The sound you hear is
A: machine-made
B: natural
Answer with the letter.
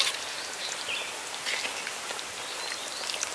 B